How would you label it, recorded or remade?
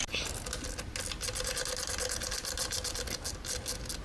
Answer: recorded